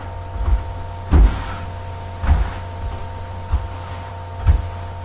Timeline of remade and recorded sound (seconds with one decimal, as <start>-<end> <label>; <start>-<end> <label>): 0.0-5.0 recorded

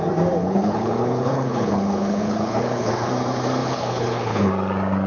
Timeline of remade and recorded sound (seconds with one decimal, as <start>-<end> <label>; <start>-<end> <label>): 0.0-0.4 recorded; 0.4-3.1 remade; 3.1-3.6 recorded; 3.6-4.5 remade; 4.5-5.1 recorded

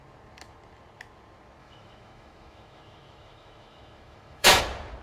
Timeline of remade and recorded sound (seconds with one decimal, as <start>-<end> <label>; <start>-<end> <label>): 0.0-1.6 recorded; 1.6-4.6 remade; 4.6-5.0 recorded

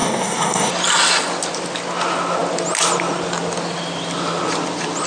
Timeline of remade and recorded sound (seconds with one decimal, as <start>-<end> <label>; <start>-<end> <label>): 0.0-0.7 remade; 0.7-5.1 recorded

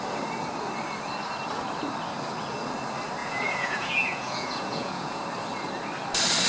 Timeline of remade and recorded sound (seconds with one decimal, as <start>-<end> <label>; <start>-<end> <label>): 0.0-3.2 recorded; 3.2-5.2 remade; 5.2-6.5 recorded

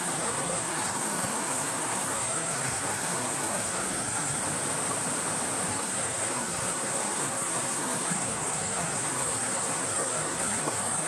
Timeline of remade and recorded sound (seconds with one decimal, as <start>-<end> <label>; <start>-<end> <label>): 0.0-4.4 remade; 4.4-5.7 recorded; 5.7-11.1 remade

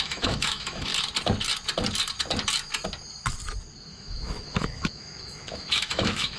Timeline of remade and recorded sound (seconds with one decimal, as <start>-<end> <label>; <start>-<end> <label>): 0.0-0.9 remade; 0.9-3.9 recorded; 3.9-6.4 remade